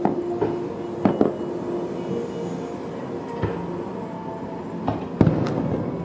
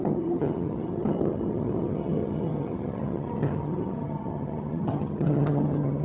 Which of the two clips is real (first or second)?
first